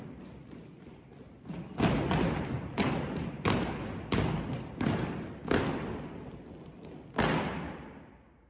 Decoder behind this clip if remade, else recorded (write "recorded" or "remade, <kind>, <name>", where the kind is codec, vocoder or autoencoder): recorded